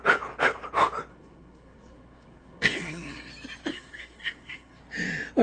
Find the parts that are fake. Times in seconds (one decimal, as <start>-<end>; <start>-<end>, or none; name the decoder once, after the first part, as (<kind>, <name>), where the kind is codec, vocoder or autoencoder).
1.1-3.3 (codec, SNAC); 3.7-4.8